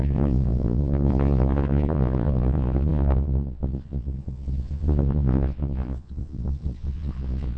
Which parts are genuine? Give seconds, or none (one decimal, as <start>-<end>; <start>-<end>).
none